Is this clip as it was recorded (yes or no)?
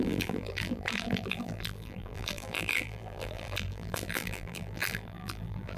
no